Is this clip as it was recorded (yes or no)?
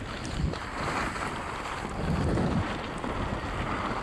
yes